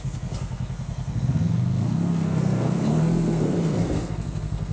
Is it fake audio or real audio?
fake